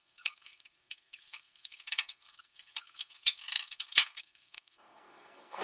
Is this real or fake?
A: fake